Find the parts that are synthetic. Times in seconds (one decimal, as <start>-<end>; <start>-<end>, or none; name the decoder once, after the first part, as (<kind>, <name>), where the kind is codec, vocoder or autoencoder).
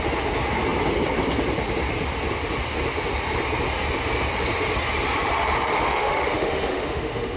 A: 5.7-7.4 (autoencoder, DAC-VAE)